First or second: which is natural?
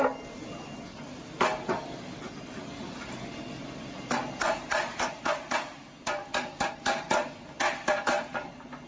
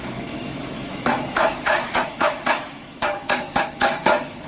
first